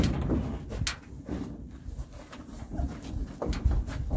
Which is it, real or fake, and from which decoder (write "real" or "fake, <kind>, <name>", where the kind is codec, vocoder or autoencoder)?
real